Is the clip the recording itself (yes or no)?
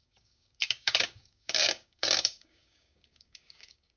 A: no